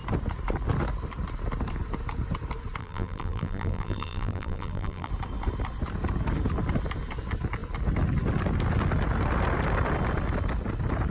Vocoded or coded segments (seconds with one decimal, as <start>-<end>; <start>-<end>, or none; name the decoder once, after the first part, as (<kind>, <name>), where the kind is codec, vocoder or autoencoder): 2.8-5.1 (vocoder, BigVGAN v2)